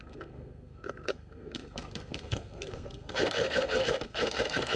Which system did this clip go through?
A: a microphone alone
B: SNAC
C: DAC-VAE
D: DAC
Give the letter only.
B